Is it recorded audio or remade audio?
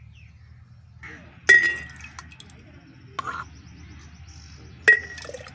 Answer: recorded